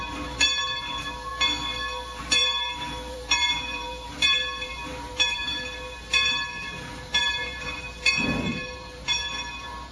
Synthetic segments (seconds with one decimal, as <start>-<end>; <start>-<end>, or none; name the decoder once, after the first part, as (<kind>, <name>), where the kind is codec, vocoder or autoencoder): 0.0-1.3 (vocoder, BigVGAN v2); 2.2-9.9